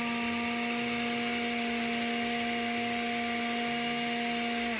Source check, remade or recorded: recorded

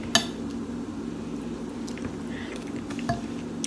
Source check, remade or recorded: recorded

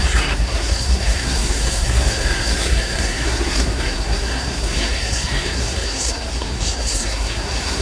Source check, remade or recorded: remade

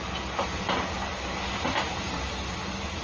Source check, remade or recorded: recorded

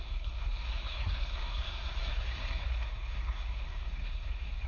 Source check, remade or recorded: remade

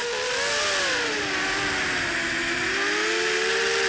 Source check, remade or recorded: recorded